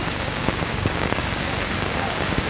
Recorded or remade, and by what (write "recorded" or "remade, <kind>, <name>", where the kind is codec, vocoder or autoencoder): remade, codec, DAC